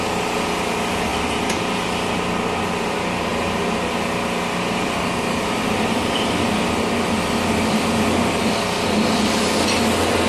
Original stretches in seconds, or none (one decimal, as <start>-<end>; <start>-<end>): 0.0-10.3